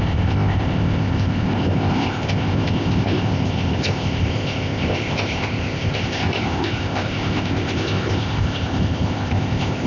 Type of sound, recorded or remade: remade